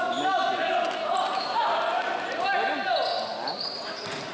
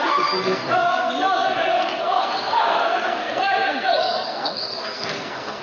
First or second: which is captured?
first